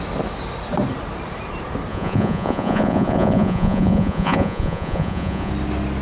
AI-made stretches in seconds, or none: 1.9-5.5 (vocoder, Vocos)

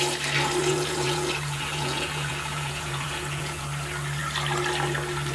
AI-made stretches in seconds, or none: 0.6-3.6 (vocoder, Vocos)

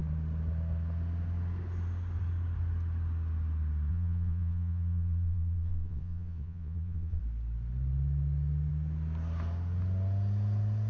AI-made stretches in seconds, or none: 3.9-7.2 (vocoder, Vocos)

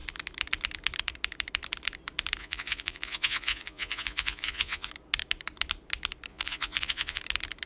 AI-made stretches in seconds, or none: 2.4-4.9 (vocoder, Vocos); 6.3-7.2

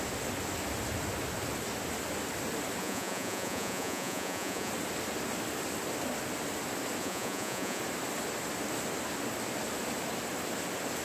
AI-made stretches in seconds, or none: 2.8-4.7 (vocoder, Vocos); 7.0-7.8

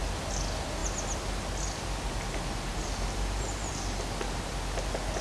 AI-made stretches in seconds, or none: none

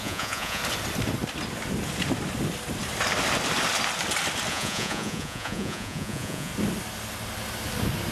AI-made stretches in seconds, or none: 0.0-0.6 (vocoder, Vocos); 4.5-6.5

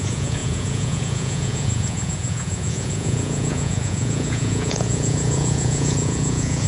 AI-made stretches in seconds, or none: 0.0-6.7 (vocoder, Vocos)